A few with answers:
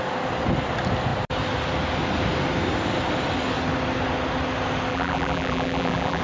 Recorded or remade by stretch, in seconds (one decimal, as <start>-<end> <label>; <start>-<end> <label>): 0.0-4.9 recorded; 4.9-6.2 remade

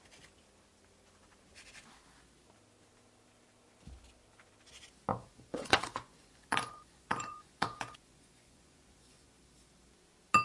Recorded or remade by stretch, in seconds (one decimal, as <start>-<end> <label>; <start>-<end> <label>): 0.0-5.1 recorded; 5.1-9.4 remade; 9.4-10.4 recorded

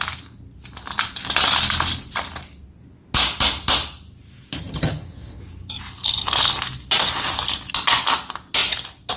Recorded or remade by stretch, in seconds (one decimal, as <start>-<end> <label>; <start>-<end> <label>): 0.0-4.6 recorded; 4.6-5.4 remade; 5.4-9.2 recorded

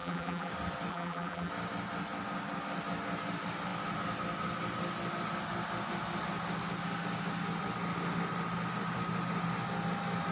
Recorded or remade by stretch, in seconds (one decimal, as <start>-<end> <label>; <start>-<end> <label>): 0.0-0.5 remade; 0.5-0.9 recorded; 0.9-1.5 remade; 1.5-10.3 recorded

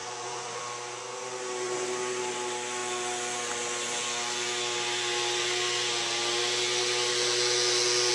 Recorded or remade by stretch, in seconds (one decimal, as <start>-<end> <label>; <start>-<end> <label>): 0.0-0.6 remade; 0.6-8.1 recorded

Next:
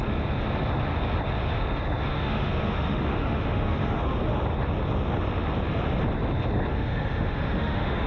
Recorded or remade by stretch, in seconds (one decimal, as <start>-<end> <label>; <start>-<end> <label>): 0.0-2.1 recorded; 2.1-4.0 remade; 4.0-6.7 recorded; 6.7-8.1 remade

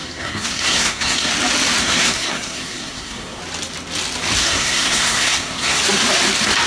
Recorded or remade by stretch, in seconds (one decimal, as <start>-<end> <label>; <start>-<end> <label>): 0.0-1.3 remade; 1.3-1.8 recorded; 1.8-3.4 remade; 3.4-4.4 recorded; 4.4-5.8 remade; 5.8-6.7 recorded